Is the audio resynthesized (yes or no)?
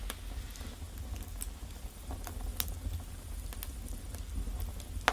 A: no